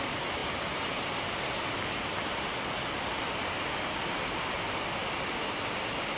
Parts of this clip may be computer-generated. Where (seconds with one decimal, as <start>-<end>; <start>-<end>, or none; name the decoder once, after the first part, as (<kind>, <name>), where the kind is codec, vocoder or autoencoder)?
none